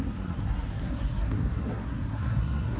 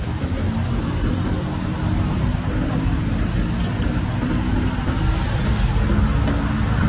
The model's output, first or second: first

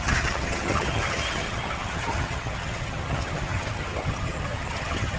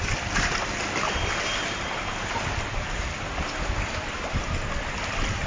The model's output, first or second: first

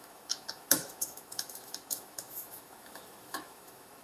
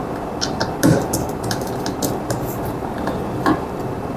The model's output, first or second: first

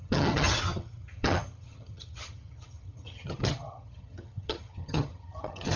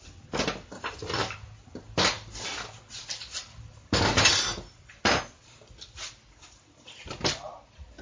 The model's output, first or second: first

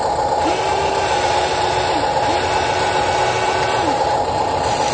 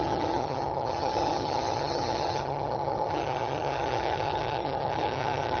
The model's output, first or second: second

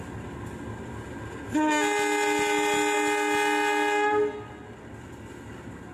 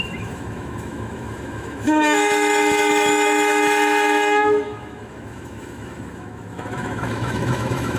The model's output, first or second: second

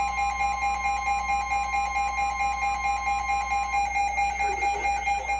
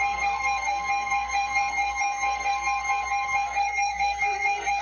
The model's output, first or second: second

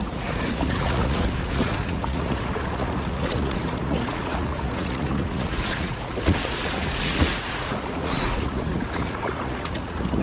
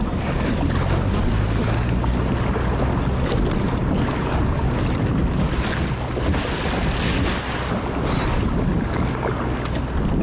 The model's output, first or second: first